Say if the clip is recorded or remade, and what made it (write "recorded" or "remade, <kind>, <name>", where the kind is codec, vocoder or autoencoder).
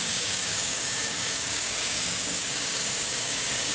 remade, codec, DAC